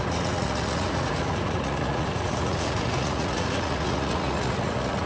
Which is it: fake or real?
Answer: fake